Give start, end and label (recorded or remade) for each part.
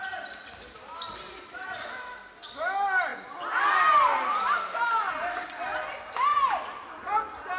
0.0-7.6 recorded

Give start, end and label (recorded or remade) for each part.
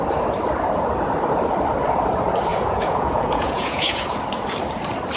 0.0-2.5 recorded; 2.5-4.0 remade; 4.0-5.2 recorded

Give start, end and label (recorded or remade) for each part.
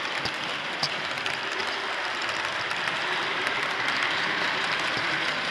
0.0-1.6 remade; 1.6-2.2 recorded; 2.2-5.5 remade